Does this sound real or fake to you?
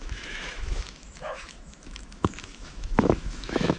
fake